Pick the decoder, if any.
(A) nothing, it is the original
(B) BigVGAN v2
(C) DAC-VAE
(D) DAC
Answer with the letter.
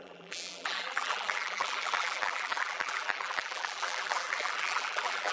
B